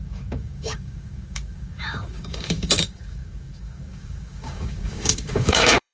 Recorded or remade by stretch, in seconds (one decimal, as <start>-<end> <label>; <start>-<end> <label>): 0.0-5.9 remade